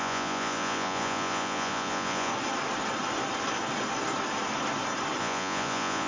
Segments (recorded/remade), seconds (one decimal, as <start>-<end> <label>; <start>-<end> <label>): 0.0-2.3 remade; 2.3-5.2 recorded; 5.2-6.1 remade